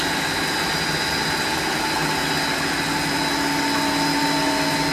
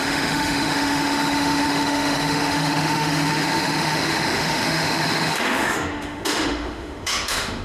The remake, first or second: second